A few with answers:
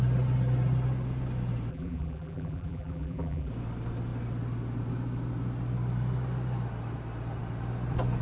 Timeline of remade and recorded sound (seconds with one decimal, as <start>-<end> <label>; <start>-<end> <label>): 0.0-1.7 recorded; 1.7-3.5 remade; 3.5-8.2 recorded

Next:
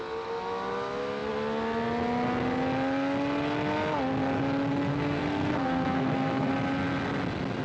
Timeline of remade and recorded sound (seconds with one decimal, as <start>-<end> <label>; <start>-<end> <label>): 0.0-4.9 recorded; 4.9-6.5 remade; 6.5-7.6 recorded

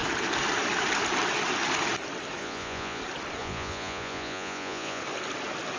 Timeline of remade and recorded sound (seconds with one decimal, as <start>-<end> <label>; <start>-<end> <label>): 0.0-2.4 recorded; 2.4-3.0 remade; 3.0-3.4 recorded; 3.4-5.0 remade; 5.0-5.8 recorded

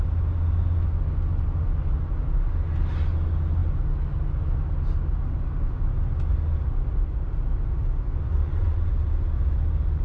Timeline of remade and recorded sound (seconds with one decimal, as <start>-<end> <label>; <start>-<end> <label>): 0.0-8.3 recorded; 8.3-8.9 remade; 8.9-10.0 recorded

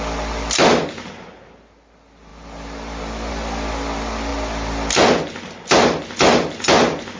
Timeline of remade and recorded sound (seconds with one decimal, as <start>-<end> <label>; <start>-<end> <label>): 0.0-7.2 recorded

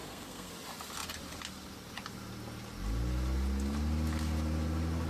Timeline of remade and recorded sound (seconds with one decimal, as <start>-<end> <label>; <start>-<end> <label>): 0.0-0.5 remade; 0.5-5.1 recorded

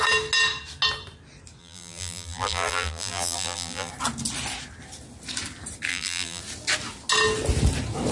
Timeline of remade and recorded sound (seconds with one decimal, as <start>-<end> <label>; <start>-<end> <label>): 0.0-1.6 recorded; 1.6-3.9 remade; 3.9-5.9 recorded; 5.9-6.4 remade; 6.4-8.1 recorded

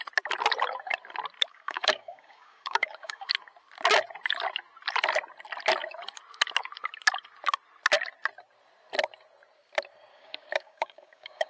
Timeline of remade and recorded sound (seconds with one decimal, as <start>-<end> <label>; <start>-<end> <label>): 0.0-1.5 recorded; 1.5-3.3 remade; 3.3-10.1 recorded; 10.1-11.5 remade